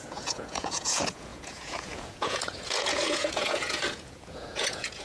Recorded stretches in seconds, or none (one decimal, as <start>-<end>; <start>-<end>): none